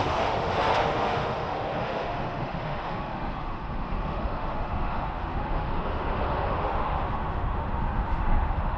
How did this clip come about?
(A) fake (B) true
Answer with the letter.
A